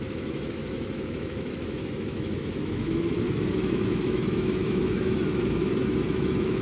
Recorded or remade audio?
remade